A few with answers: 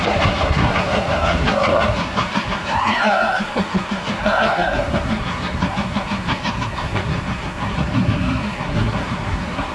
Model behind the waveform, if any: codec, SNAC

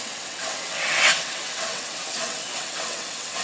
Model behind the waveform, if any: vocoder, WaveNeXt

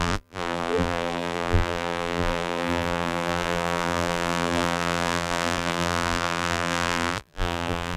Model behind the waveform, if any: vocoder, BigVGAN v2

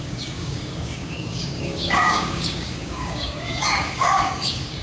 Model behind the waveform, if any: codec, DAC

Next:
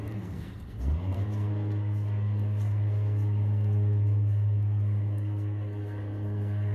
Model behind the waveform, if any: codec, SNAC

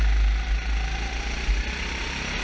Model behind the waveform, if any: none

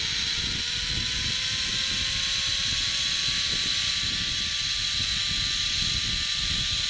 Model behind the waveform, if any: none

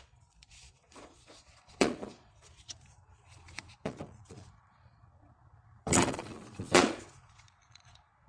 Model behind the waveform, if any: vocoder, Vocos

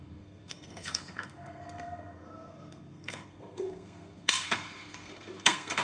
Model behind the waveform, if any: codec, SNAC